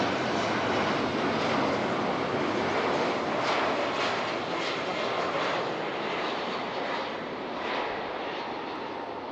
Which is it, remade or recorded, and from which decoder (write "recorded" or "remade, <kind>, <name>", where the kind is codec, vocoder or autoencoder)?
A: recorded